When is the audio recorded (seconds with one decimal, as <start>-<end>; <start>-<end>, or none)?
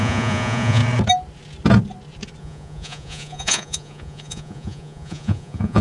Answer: 0.8-2.4